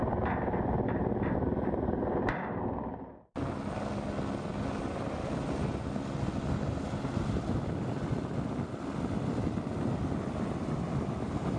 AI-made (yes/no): no